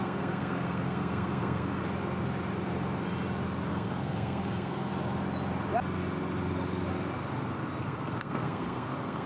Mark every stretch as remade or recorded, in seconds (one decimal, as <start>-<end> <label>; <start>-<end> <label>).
0.0-1.8 remade; 1.8-3.7 recorded; 3.7-4.9 remade; 4.9-7.8 recorded; 7.8-9.3 remade